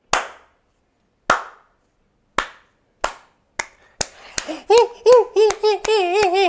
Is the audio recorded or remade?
recorded